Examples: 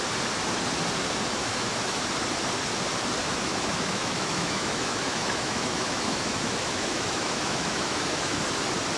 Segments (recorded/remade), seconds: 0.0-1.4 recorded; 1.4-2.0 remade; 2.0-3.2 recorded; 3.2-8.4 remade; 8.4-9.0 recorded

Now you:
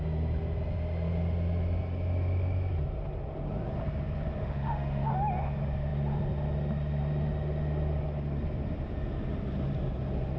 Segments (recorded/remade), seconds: 0.0-4.4 recorded; 4.4-5.1 remade; 5.1-10.4 recorded